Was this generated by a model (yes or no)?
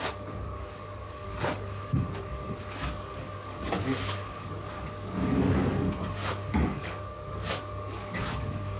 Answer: yes